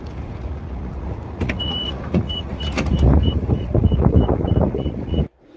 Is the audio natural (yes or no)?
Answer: no